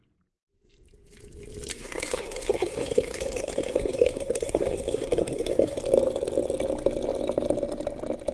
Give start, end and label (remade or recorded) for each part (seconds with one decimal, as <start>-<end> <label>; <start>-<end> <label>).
0.0-1.7 recorded; 1.7-5.8 remade; 5.8-8.3 recorded

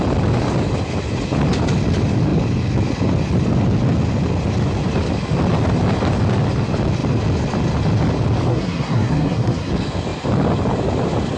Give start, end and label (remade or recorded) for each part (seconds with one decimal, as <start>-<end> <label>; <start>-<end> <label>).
0.0-8.5 recorded; 8.5-9.7 remade; 9.7-11.4 recorded

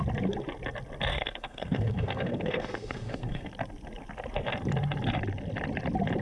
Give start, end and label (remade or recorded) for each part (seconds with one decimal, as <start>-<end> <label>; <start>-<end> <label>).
0.0-1.1 recorded; 1.1-3.5 remade; 3.5-6.2 recorded

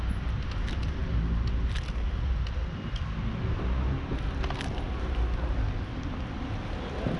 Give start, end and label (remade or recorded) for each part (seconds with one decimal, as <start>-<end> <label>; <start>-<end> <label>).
0.0-7.2 recorded

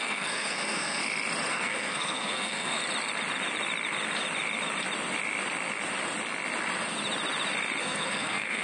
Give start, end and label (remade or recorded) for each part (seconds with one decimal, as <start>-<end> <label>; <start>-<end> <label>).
0.0-1.0 remade; 1.0-1.5 recorded; 1.5-2.8 remade; 2.8-7.8 recorded; 7.8-8.6 remade

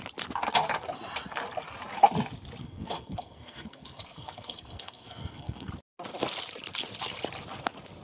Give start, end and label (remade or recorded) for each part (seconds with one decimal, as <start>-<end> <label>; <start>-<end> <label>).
0.0-2.6 recorded; 2.6-5.7 remade; 5.7-8.0 recorded

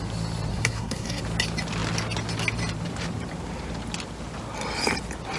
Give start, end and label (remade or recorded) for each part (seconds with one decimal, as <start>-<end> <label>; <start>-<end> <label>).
0.0-0.5 recorded; 0.5-1.2 remade; 1.2-5.4 recorded

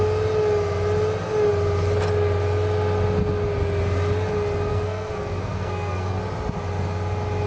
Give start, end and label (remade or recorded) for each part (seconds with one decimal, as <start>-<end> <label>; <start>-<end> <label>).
0.0-4.7 recorded; 4.7-6.2 remade; 6.2-7.5 recorded